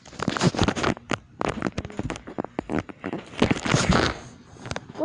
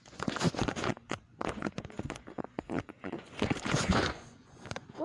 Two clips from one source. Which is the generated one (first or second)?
second